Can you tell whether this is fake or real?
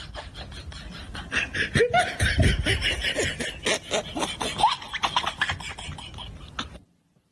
real